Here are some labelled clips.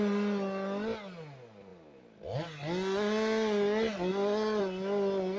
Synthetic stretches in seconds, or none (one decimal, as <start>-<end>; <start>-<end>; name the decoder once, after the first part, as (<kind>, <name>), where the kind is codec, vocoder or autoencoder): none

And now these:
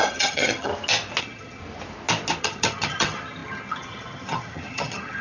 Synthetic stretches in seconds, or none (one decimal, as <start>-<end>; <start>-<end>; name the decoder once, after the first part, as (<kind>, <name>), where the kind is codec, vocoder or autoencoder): 0.0-0.7 (vocoder, HiFi-GAN); 1.2-1.6; 2.4-5.2

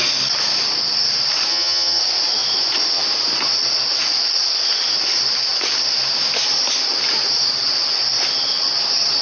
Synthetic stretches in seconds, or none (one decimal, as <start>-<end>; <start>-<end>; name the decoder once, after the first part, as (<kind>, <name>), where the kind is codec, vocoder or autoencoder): 1.5-2.0 (vocoder, HiFi-GAN)

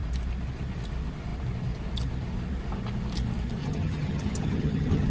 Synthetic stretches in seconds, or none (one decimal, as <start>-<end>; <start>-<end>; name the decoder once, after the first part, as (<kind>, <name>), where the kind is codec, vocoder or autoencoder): 3.6-5.1 (vocoder, HiFi-GAN)

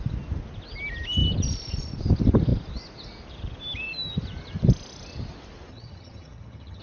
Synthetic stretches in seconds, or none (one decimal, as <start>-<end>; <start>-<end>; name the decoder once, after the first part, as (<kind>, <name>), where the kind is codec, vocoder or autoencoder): 5.7-6.8 (vocoder, HiFi-GAN)

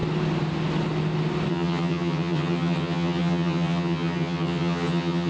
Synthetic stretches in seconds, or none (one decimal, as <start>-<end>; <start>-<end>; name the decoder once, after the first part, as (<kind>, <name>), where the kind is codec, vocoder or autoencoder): 1.5-5.3 (vocoder, HiFi-GAN)

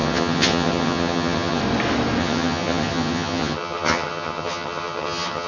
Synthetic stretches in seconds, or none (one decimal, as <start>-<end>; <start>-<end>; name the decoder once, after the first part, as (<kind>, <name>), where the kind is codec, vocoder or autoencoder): 0.0-1.6 (vocoder, HiFi-GAN); 2.2-5.5

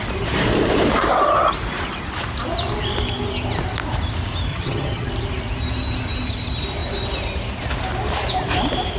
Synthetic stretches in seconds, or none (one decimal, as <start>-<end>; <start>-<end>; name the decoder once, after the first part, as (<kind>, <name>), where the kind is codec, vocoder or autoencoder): 4.5-5.1 (vocoder, HiFi-GAN)